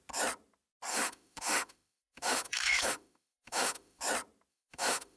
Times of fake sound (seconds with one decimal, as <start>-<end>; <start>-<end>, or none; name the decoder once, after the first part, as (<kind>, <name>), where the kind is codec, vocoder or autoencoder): 0.9-4.0 (autoencoder, DAC-VAE); 4.5-5.2